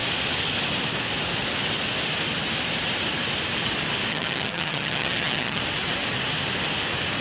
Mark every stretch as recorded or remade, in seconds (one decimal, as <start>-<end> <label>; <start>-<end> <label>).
0.0-4.1 recorded; 4.1-5.6 remade; 5.6-7.2 recorded